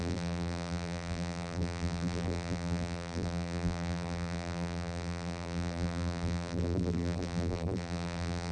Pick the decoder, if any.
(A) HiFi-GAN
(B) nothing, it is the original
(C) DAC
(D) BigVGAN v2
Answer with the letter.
D